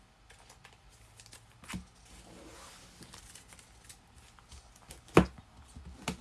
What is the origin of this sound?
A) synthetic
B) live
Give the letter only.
B